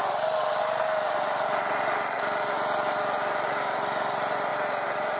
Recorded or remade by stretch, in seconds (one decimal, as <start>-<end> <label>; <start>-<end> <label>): 0.0-5.2 recorded